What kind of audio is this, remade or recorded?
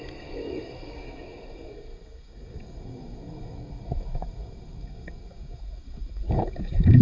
remade